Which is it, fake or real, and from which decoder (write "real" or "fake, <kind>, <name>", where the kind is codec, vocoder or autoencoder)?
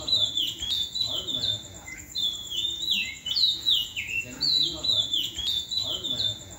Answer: fake, vocoder, Vocos